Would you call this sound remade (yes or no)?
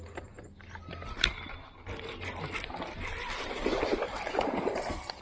no